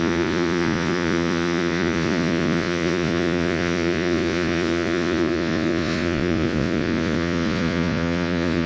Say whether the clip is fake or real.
fake